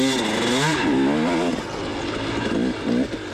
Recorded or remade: recorded